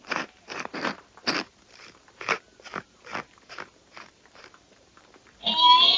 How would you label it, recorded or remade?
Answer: remade